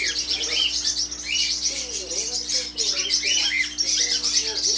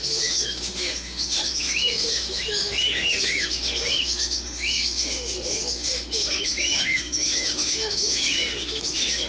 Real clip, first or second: first